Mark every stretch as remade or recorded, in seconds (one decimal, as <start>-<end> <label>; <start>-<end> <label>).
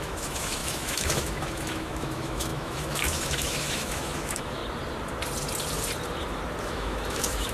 0.0-4.6 remade; 4.6-6.6 recorded; 6.6-7.5 remade